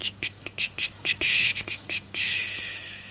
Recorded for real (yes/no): no